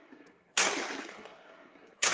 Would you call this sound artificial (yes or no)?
yes